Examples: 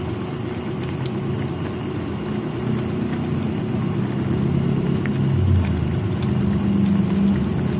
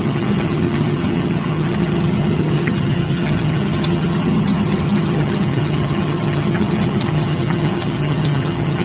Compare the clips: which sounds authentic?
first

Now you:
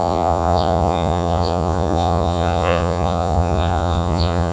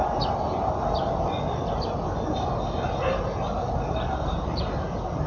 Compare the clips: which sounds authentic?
second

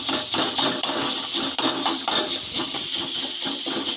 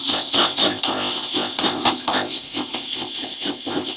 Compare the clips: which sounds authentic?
first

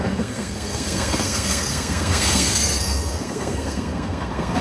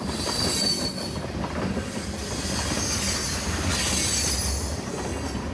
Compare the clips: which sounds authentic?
second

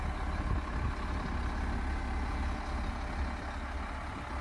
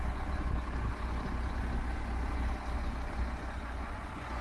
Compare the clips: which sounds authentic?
first